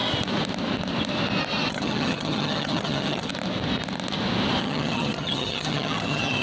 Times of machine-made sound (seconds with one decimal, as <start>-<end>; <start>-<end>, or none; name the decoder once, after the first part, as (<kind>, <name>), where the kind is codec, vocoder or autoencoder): 1.7-3.3 (vocoder, HiFi-GAN); 4.6-6.4